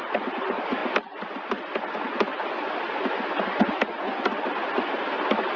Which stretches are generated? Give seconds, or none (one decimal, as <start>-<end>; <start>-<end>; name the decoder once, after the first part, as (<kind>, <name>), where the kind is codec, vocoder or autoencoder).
none